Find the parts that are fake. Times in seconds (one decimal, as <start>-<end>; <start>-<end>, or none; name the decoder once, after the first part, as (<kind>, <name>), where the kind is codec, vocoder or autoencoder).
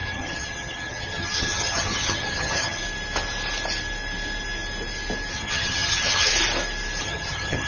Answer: 0.0-2.8 (vocoder, HiFi-GAN); 5.3-6.3; 7.0-7.7